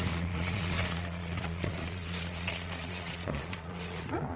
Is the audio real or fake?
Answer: fake